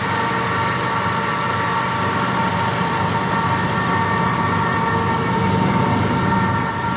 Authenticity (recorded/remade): recorded